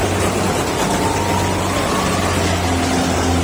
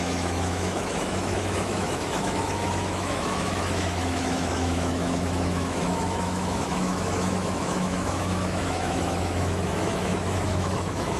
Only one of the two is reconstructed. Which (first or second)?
second